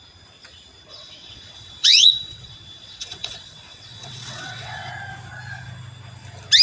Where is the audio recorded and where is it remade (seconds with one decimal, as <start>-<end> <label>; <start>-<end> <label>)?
0.0-0.9 recorded; 0.9-4.9 remade; 4.9-6.6 recorded